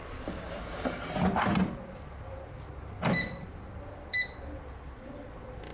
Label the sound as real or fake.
real